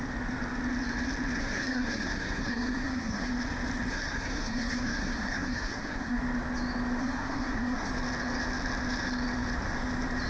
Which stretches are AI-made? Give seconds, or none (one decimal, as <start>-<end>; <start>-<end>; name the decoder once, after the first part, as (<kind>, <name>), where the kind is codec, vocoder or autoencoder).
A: 1.4-3.3 (codec, SNAC); 3.9-6.2; 7.0-7.9